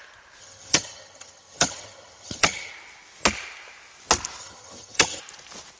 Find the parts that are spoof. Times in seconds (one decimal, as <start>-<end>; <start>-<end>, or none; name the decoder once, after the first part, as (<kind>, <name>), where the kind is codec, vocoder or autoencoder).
0.4-2.7 (vocoder, HiFi-GAN); 4.4-5.2